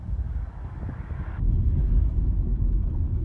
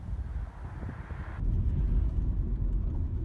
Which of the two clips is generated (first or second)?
first